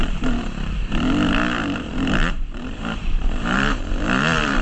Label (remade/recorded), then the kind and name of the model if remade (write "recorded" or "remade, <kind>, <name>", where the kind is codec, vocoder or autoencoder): remade, vocoder, BigVGAN v2